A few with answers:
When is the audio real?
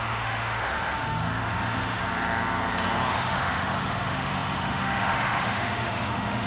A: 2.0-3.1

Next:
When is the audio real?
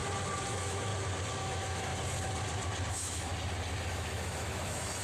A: 0.0-0.5; 0.9-1.4; 1.9-2.9; 3.3-3.9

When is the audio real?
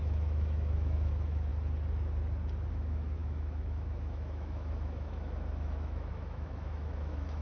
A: 1.5-2.7